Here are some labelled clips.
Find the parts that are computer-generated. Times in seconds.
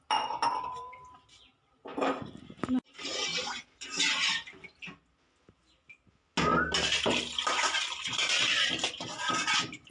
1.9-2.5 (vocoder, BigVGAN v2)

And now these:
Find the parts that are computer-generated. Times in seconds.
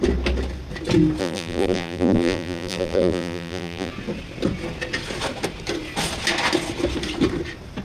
1.2-3.9 (vocoder, BigVGAN v2)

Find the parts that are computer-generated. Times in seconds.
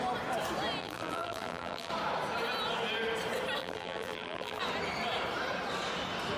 0.8-1.9 (vocoder, BigVGAN v2); 3.6-4.6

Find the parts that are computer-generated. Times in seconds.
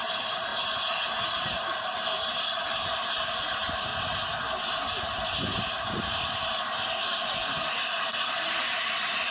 0.0-0.5 (vocoder, BigVGAN v2); 1.2-3.9; 5.0-9.3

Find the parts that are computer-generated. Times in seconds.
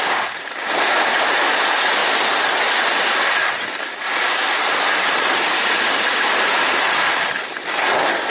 0.0-8.3 (vocoder, BigVGAN v2)